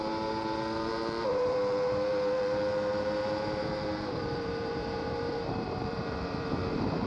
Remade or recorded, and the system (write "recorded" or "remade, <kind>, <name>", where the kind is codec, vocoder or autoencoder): remade, vocoder, BigVGAN v2